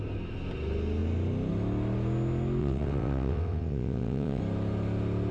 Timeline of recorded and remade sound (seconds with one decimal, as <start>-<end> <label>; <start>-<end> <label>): 0.0-2.6 recorded; 2.6-4.4 remade; 4.4-5.3 recorded